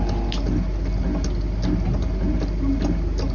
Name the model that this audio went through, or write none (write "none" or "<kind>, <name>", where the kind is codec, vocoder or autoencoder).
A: none